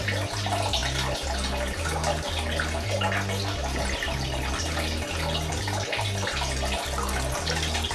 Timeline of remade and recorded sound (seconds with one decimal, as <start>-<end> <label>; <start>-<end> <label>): 0.0-7.9 recorded